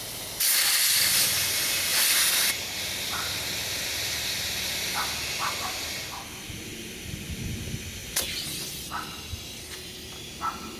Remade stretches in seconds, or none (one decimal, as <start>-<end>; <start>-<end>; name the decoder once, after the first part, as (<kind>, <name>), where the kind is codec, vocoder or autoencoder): 1.9-2.7 (vocoder, BigVGAN v2); 8.0-9.4

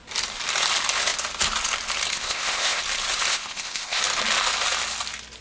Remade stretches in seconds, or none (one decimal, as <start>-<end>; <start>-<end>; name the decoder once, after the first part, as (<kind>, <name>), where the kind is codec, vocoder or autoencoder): 2.1-2.8 (codec, ZipCodec); 3.3-4.0

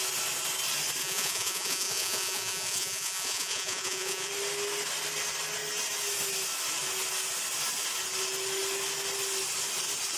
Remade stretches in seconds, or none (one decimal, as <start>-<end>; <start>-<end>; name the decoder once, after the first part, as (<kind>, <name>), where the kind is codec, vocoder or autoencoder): 1.0-4.3 (vocoder, Vocos)

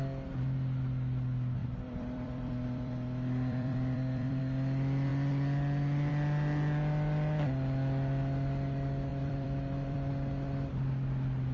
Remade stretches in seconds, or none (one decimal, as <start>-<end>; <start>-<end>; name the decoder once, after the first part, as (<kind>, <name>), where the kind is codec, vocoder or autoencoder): 1.6-4.4 (vocoder, BigVGAN v2); 9.1-10.1